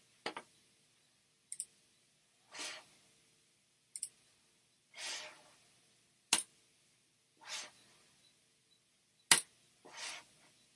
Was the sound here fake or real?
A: real